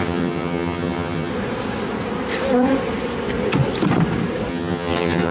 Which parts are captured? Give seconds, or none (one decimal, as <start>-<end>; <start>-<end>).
1.3-4.5